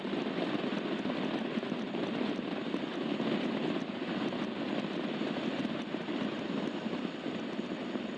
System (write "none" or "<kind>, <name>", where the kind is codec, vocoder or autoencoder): none